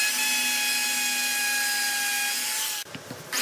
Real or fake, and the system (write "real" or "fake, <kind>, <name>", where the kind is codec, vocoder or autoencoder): real